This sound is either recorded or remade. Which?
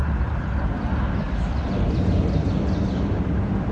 recorded